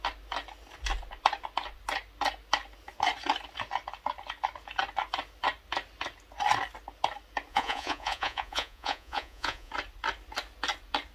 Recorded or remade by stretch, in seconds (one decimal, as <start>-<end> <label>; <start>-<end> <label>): 0.0-7.5 recorded; 7.5-9.7 remade; 9.7-11.1 recorded